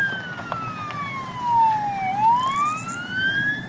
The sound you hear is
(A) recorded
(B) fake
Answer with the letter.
A